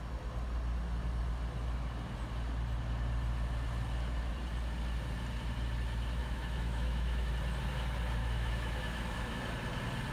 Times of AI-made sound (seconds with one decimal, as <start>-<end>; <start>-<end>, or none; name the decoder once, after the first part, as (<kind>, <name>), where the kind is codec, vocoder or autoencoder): 6.2-7.3 (autoencoder, DAC-VAE); 8.2-9.4